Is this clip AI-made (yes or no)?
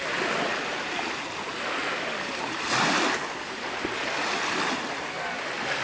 no